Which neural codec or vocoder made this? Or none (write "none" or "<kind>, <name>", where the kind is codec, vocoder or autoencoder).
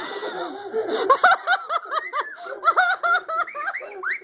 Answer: none